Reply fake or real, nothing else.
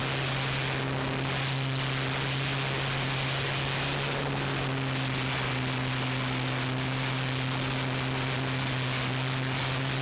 real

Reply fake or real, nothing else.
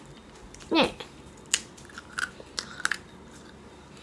real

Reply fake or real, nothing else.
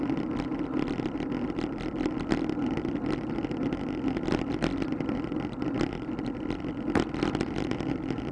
fake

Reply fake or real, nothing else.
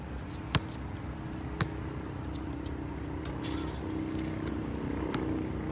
real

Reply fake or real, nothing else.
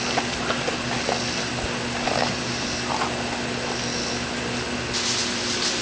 real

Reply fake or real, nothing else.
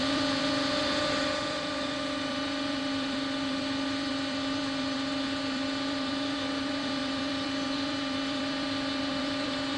fake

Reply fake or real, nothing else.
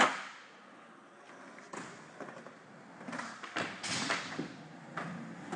real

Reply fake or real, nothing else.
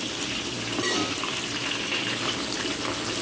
fake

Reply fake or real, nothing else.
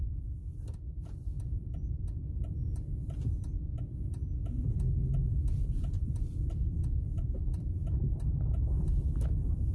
fake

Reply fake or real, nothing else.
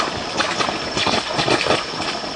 real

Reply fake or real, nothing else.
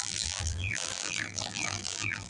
fake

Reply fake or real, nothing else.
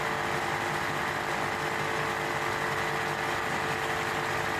real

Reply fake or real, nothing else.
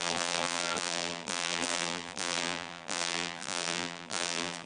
fake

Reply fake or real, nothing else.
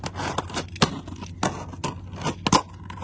real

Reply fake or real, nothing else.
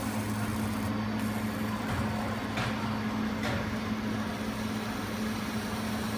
real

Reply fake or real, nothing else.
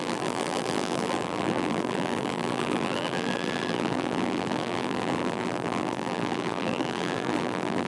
fake